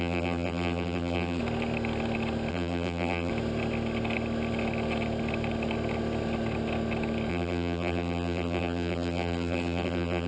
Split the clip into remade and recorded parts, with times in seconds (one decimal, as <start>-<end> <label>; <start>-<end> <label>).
0.0-1.4 remade; 1.4-2.5 recorded; 2.5-3.3 remade; 3.3-7.3 recorded; 7.3-10.3 remade